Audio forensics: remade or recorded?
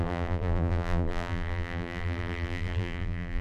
remade